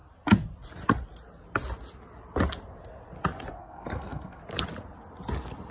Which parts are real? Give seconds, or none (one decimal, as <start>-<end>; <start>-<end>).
0.0-3.6; 4.4-5.7